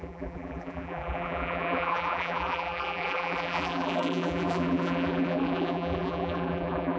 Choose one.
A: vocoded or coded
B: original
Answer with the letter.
A